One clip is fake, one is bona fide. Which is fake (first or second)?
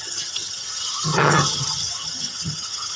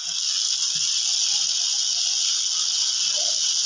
first